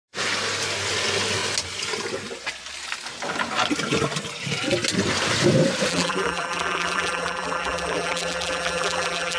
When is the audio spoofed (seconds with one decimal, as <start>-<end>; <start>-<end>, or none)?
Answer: 5.9-9.4